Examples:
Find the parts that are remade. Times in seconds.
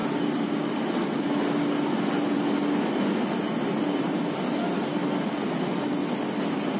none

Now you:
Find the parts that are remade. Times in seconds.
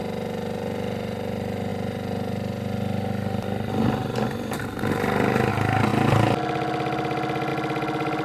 none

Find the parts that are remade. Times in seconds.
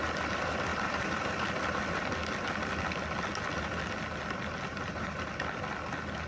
0.7-1.3; 4.7-5.3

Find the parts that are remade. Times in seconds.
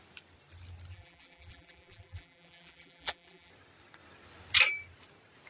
0.9-3.5